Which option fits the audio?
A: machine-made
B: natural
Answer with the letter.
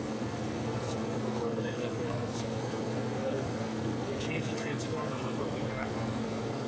A